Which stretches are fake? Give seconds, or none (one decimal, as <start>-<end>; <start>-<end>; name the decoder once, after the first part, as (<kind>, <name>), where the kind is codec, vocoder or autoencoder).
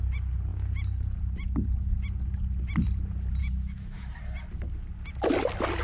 3.4-4.1 (autoencoder, DAC-VAE)